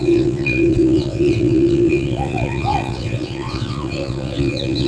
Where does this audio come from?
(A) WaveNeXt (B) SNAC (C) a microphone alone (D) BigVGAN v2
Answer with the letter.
A